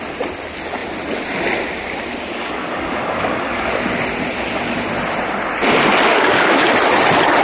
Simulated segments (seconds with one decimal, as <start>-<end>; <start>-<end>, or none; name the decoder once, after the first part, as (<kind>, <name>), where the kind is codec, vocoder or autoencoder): 2.3-3.8 (codec, DAC); 6.1-6.6